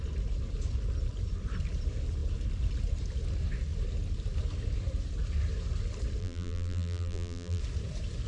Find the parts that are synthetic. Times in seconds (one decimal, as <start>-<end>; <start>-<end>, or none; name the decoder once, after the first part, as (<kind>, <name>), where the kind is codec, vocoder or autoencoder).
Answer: 6.2-7.6 (vocoder, BigVGAN v2)